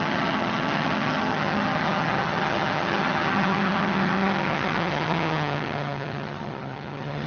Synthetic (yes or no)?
yes